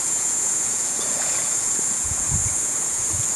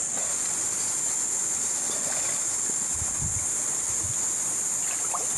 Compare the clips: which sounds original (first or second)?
second